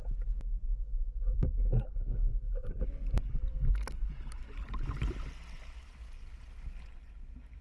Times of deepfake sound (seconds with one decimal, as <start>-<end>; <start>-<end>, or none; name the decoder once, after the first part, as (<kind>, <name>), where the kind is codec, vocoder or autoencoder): 0.7-2.7 (codec, DAC); 3.5-4.1